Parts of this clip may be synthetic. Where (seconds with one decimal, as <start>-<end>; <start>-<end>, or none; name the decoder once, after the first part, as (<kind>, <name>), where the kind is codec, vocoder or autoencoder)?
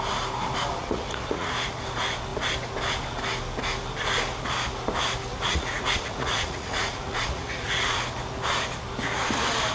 0.8-1.5 (vocoder, Vocos); 5.3-8.0